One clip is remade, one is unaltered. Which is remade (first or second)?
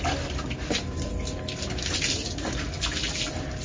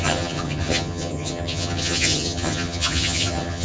second